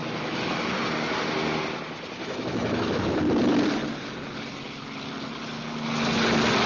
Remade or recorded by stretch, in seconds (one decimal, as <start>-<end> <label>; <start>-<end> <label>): 0.0-0.7 remade; 0.7-2.2 recorded; 2.2-3.2 remade; 3.2-6.7 recorded